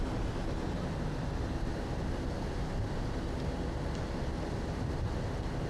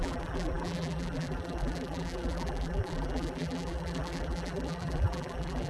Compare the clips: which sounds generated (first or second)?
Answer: second